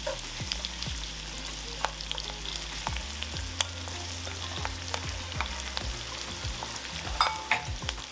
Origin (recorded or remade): recorded